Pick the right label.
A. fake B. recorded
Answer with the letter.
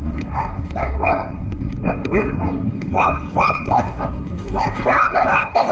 A